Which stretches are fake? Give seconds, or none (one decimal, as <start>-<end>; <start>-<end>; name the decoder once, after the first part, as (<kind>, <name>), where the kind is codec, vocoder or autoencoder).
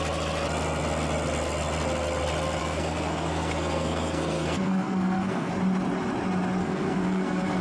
2.6-5.5 (codec, SNAC); 6.6-7.6